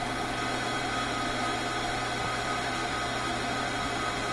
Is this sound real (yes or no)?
yes